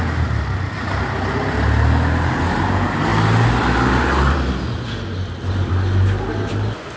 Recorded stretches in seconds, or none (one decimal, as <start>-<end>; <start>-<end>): 0.0-7.0